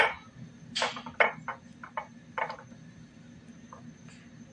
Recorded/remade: recorded